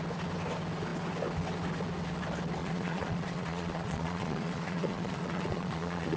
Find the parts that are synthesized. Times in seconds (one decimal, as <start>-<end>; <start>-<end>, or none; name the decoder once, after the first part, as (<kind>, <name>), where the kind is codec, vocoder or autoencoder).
2.6-6.2 (vocoder, Vocos)